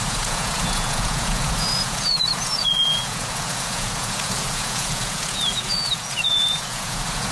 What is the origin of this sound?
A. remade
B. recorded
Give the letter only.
A